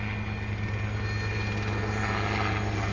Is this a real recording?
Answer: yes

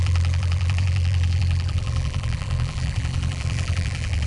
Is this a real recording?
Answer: no